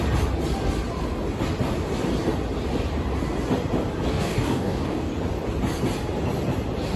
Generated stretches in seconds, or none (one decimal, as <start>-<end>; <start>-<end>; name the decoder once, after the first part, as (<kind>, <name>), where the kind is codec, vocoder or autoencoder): 4.1-5.1 (codec, DAC)